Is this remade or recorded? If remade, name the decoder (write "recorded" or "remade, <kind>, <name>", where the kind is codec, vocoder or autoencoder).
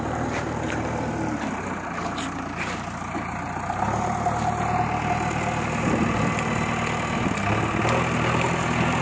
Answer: recorded